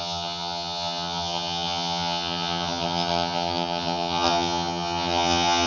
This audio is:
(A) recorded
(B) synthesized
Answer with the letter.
B